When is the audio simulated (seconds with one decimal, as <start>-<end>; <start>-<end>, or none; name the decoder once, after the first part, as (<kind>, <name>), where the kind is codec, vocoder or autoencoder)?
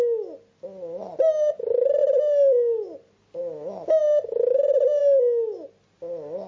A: none